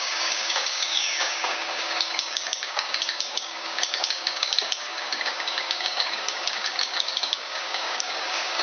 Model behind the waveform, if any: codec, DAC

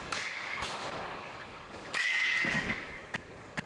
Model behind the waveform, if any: codec, DAC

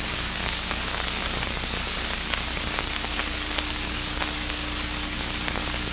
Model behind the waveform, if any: codec, DAC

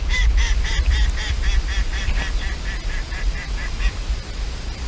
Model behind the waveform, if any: none